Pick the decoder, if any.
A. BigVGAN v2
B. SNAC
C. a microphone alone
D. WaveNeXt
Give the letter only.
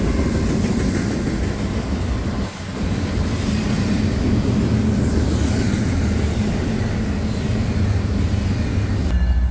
C